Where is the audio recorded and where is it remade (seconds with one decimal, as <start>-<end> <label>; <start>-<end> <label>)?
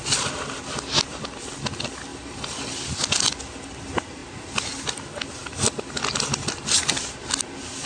0.0-2.1 recorded; 2.1-2.7 remade; 2.7-5.4 recorded; 5.4-6.9 remade; 6.9-7.9 recorded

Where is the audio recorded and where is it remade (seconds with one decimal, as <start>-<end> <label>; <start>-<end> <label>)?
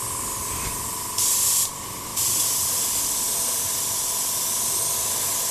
0.0-0.4 recorded; 0.4-1.0 remade; 1.0-5.5 recorded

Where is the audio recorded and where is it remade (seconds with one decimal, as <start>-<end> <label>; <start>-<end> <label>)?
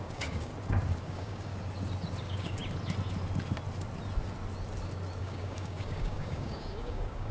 0.0-0.5 remade; 0.5-1.0 recorded; 1.0-1.5 remade; 1.5-2.2 recorded; 2.2-2.6 remade; 2.6-5.2 recorded; 5.2-7.3 remade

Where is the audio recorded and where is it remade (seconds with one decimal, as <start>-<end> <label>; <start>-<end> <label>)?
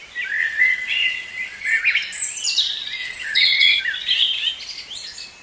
0.0-0.4 recorded; 0.4-1.8 remade; 1.8-3.0 recorded; 3.0-3.8 remade; 3.8-5.4 recorded